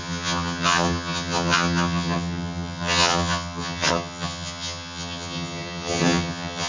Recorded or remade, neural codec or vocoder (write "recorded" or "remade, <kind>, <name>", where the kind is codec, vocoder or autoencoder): remade, vocoder, HiFi-GAN